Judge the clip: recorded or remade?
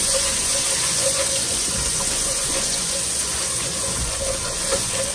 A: remade